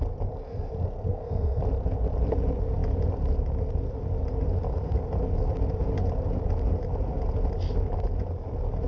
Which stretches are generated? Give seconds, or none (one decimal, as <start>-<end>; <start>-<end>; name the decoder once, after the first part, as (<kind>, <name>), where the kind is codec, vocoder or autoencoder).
1.1-1.6 (codec, SNAC)